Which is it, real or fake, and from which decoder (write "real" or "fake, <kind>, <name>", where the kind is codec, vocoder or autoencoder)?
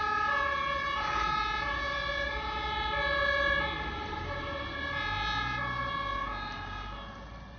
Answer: real